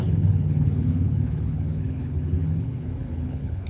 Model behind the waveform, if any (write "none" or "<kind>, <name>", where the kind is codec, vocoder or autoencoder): codec, HILCodec